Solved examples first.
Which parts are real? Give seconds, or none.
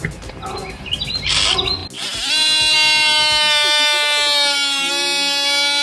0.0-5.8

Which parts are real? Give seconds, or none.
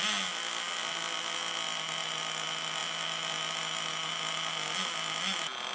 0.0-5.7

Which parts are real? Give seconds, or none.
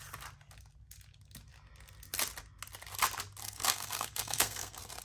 0.0-3.4